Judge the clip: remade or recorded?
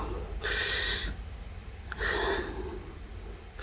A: recorded